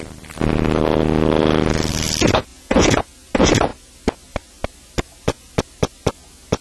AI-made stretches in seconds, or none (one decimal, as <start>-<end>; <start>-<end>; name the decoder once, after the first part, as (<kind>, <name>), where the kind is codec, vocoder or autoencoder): 2.5-3.0 (vocoder, Vocos)